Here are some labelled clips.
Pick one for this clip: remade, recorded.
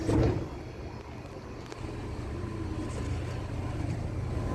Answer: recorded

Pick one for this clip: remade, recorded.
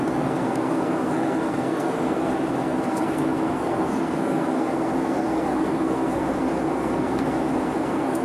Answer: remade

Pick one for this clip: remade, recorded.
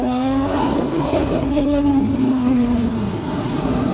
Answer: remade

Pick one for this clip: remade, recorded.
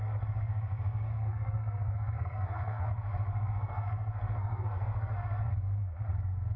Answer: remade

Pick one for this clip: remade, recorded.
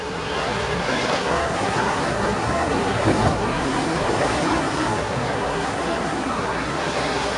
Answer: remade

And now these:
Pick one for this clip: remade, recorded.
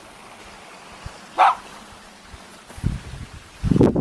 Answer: recorded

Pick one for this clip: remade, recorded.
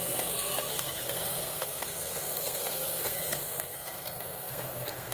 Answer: remade